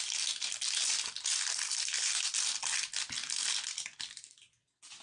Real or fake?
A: real